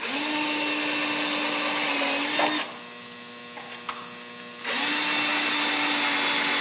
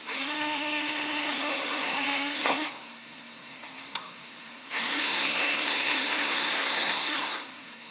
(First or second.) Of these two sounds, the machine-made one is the second